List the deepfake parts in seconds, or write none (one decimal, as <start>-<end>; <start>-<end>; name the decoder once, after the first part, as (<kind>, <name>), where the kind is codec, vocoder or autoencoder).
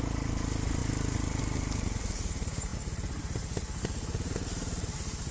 none